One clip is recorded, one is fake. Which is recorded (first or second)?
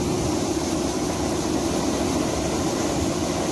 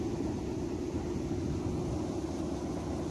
second